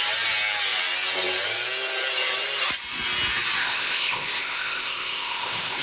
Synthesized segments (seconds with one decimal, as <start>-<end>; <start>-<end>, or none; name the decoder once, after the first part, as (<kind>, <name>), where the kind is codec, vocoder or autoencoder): 3.6-5.8 (codec, ZipCodec)